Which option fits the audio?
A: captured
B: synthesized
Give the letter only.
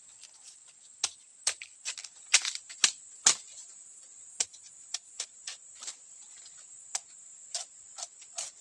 A